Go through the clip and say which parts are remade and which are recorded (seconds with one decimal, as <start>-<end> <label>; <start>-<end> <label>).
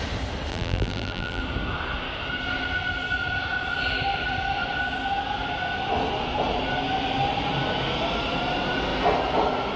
0.0-0.5 recorded; 0.5-1.4 remade; 1.4-9.8 recorded